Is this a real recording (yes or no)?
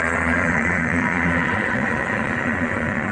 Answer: no